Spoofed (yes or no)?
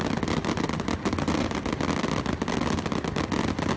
no